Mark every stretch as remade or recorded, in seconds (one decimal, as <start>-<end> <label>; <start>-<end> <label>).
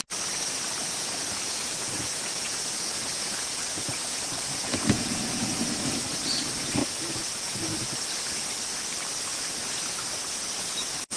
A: 0.0-0.8 recorded; 0.8-5.9 remade; 5.9-6.8 recorded; 6.8-7.6 remade; 7.6-9.3 recorded; 9.3-11.2 remade